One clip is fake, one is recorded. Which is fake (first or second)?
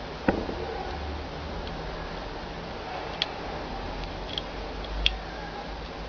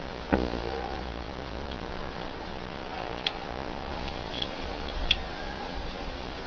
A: second